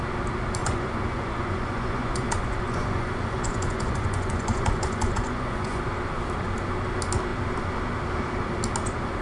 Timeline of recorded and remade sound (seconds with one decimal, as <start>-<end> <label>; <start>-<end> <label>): 0.0-0.6 recorded; 0.6-5.8 remade; 5.8-9.2 recorded